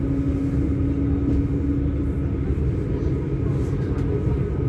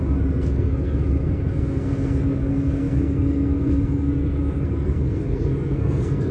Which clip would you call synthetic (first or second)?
second